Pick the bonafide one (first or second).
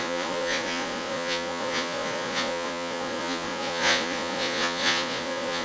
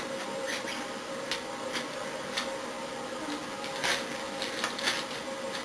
second